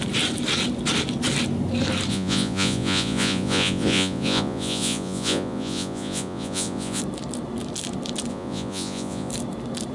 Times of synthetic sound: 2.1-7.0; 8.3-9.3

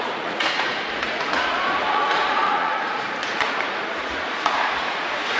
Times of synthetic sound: 0.0-5.4

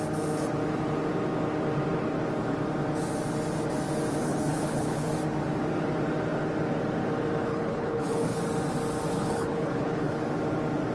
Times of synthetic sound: 4.2-5.1; 7.5-8.4; 9.1-10.2

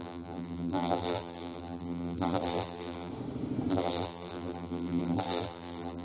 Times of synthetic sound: 0.0-3.1; 3.7-6.0

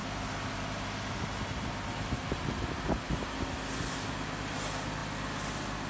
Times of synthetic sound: none

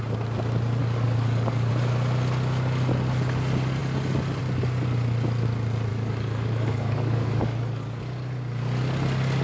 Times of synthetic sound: 0.8-1.7; 5.9-8.0